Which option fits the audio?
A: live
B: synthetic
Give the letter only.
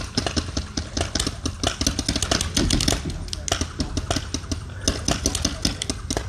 A